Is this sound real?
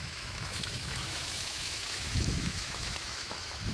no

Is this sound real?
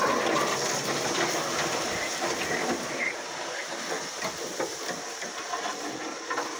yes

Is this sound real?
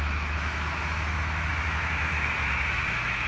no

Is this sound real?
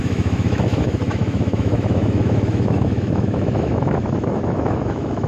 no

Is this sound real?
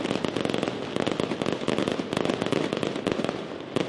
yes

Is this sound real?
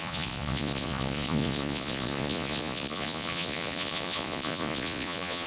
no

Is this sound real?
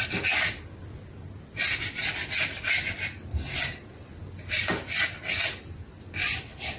yes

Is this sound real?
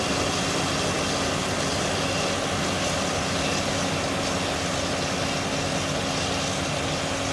yes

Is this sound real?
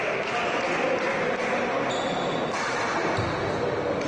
yes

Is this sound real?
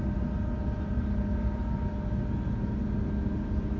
yes